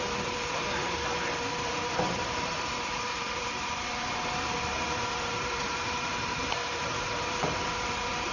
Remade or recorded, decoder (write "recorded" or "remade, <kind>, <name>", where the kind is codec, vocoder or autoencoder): remade, vocoder, BigVGAN v2